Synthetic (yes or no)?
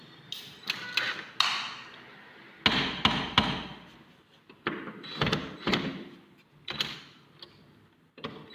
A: no